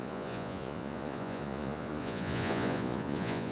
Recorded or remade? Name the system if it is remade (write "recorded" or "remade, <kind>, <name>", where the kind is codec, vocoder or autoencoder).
remade, vocoder, Vocos